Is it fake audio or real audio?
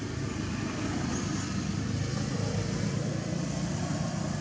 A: real